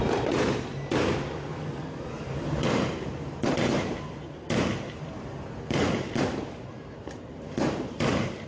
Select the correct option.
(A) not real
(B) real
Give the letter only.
A